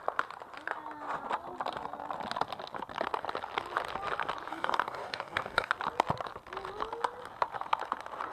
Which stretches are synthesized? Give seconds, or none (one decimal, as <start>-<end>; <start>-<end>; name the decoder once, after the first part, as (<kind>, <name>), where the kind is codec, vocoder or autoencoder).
4.5-5.7 (codec, DAC)